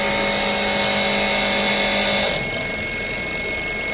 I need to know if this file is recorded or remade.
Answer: recorded